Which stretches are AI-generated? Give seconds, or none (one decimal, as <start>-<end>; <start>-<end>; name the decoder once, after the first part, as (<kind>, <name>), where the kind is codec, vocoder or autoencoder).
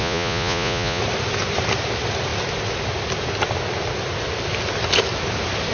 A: 0.0-1.0 (vocoder, Vocos)